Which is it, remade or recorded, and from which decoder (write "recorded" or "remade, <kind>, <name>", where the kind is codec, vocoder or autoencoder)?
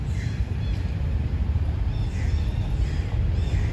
recorded